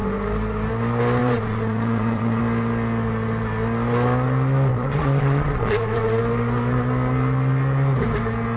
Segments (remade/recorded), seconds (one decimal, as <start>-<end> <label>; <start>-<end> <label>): 0.0-1.2 recorded; 1.2-2.4 remade; 2.4-4.7 recorded; 4.7-6.2 remade; 6.2-8.6 recorded